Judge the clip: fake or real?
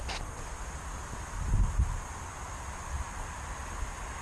real